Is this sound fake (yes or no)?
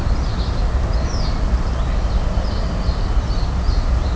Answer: no